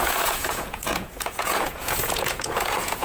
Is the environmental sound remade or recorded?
remade